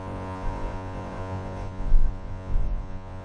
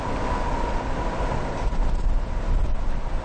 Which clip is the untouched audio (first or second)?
second